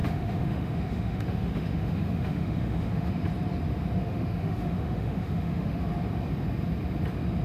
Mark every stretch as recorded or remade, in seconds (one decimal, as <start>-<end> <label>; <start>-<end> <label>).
0.0-3.1 remade; 3.1-4.0 recorded; 4.0-5.8 remade; 5.8-7.4 recorded